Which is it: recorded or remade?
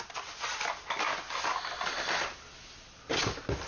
recorded